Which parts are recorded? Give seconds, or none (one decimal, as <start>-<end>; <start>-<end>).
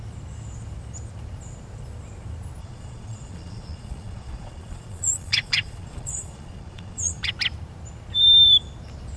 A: 0.0-2.6; 7.3-9.2